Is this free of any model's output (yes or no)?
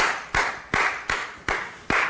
yes